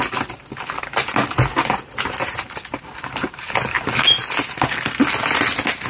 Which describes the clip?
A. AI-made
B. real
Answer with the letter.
B